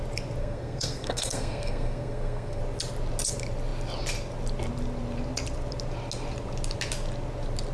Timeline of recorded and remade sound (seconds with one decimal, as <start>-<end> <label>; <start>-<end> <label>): 0.0-0.4 recorded; 0.4-2.6 remade; 2.6-7.7 recorded